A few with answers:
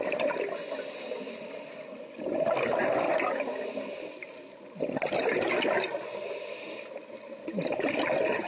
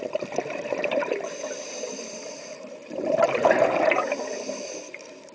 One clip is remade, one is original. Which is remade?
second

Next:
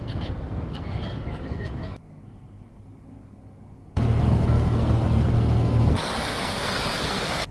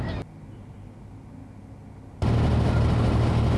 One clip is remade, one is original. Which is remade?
first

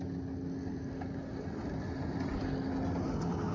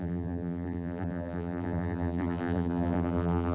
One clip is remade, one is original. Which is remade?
second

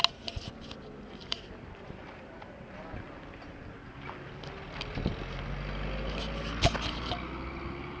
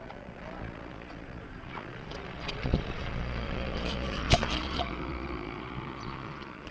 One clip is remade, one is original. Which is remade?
second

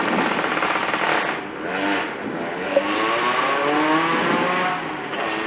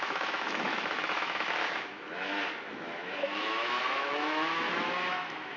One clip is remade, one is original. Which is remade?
second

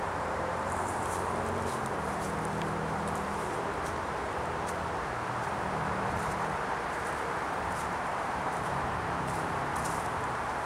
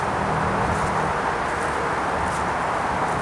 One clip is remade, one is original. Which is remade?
first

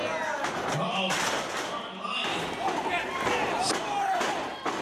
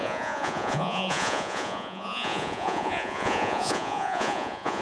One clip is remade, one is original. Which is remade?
second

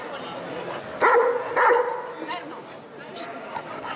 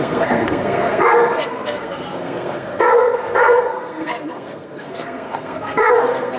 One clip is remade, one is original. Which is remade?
second